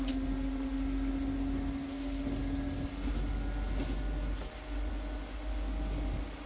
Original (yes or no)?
yes